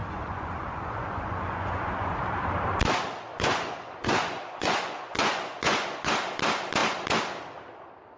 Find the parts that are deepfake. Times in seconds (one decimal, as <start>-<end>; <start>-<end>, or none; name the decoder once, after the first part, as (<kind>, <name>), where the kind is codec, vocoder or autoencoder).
0.0-2.2 (vocoder, Vocos); 3.3-6.1